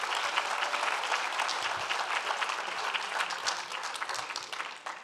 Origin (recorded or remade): recorded